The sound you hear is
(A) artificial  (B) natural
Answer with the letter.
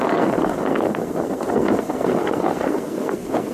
A